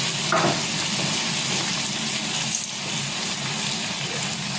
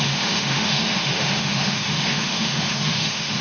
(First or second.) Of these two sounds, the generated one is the second